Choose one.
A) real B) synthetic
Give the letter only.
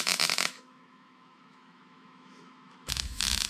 B